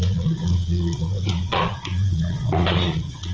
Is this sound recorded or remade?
remade